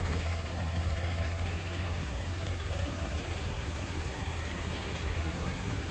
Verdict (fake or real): fake